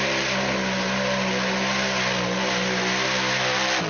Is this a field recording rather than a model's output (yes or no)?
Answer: yes